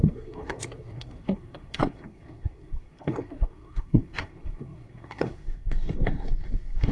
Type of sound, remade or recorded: remade